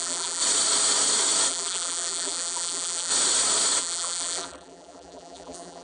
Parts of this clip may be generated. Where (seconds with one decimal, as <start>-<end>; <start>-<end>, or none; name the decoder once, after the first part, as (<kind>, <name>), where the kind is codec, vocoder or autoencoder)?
0.0-0.4 (vocoder, BigVGAN v2); 1.5-3.1; 3.8-5.8